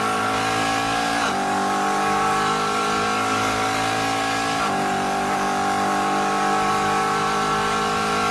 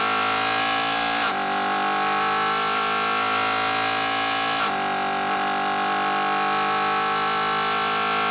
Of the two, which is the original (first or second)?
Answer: second